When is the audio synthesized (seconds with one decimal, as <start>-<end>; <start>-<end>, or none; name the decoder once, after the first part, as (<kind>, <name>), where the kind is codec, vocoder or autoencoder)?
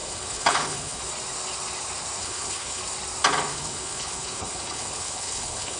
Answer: 0.0-1.0 (codec, HILCodec); 2.2-2.8; 3.5-5.8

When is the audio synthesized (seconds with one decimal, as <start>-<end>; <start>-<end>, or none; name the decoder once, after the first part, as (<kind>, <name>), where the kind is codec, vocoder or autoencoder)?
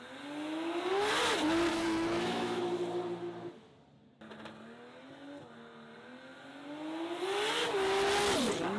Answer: 1.7-2.6 (autoencoder, DAC-VAE)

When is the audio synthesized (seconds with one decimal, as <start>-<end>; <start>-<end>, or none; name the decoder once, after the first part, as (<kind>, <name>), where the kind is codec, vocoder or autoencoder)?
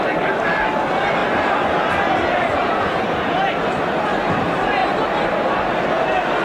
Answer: 2.6-3.6 (vocoder, Vocos)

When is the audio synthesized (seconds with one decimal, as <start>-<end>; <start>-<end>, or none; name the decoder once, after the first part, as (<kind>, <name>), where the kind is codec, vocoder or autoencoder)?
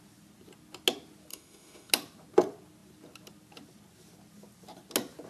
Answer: 1.3-1.9 (autoencoder, DAC-VAE)